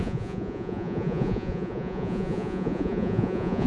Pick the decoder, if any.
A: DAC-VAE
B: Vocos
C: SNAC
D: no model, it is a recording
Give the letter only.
B